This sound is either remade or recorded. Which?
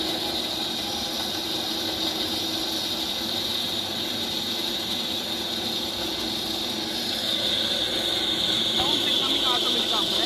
recorded